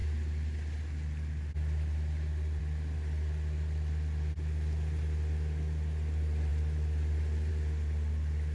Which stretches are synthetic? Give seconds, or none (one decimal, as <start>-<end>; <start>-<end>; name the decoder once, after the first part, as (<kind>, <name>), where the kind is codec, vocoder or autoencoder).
none